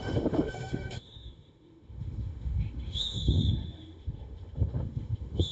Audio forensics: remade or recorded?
remade